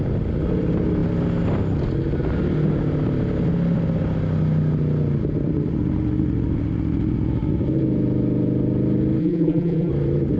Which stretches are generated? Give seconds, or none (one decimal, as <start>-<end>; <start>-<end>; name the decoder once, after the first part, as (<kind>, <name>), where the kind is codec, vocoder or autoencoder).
9.2-9.9 (vocoder, BigVGAN v2)